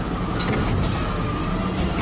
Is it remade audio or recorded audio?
recorded